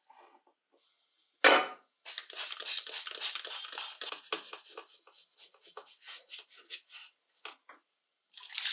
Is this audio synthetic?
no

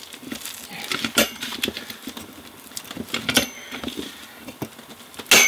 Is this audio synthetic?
no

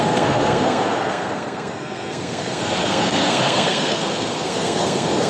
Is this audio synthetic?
yes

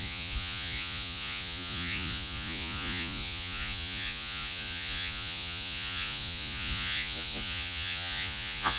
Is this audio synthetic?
yes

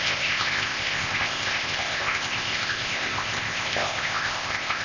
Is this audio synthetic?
yes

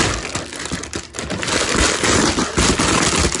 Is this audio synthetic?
no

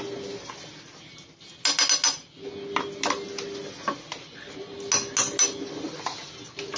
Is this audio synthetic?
no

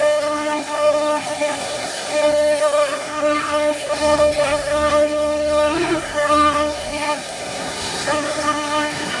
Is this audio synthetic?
yes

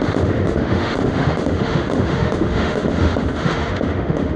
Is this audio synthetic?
yes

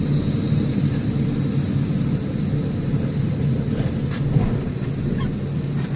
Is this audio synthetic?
no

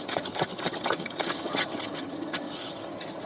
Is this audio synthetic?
yes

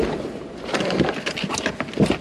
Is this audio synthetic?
yes